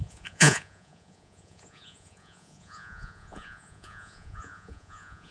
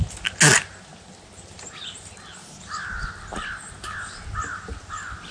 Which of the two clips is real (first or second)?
second